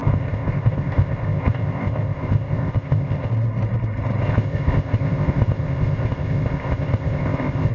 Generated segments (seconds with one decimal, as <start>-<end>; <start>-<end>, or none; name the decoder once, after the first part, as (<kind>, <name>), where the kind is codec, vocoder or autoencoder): 0.0-3.3 (codec, ZipCodec); 4.2-7.7

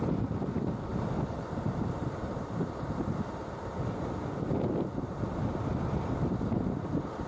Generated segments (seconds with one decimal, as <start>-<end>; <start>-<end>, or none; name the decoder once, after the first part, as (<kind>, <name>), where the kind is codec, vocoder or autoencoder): 0.9-4.3 (vocoder, BigVGAN v2)

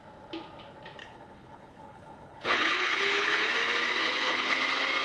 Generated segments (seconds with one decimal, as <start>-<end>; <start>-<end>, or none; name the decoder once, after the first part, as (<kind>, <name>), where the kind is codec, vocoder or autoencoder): 1.0-3.5 (codec, HILCodec); 4.0-4.6

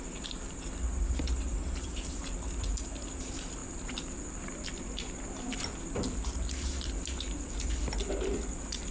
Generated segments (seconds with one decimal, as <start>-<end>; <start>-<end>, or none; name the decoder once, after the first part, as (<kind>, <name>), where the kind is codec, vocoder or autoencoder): none

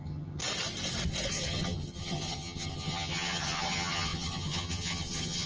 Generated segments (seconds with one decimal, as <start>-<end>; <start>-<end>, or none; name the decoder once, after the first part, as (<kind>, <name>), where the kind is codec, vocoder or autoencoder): 0.0-0.4 (vocoder, HiFi-GAN); 1.3-5.5

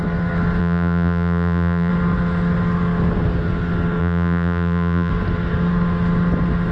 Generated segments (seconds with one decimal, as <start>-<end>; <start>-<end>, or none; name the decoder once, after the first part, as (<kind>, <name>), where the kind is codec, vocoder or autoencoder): 0.6-1.9 (vocoder, BigVGAN v2); 4.0-5.1